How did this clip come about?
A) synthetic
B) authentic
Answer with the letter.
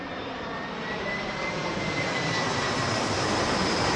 A